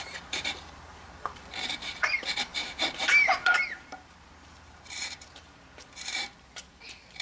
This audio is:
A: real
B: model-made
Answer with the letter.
B